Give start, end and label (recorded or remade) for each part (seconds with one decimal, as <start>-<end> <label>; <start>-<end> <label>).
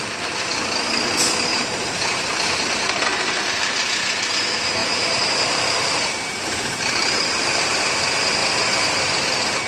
0.0-1.5 recorded; 1.5-4.3 remade; 4.3-4.8 recorded; 4.8-8.0 remade; 8.0-8.4 recorded; 8.4-9.2 remade; 9.2-9.7 recorded